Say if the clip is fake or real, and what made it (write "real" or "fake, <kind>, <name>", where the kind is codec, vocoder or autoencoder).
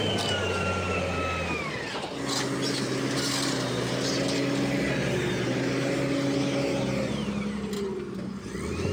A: real